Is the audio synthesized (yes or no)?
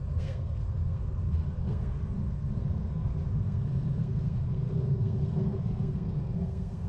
yes